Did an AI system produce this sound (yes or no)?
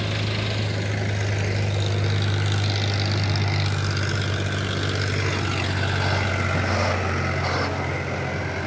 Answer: no